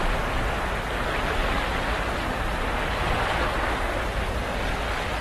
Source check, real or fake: real